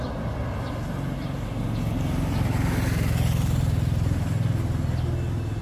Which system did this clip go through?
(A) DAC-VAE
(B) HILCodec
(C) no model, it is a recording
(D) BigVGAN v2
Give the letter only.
C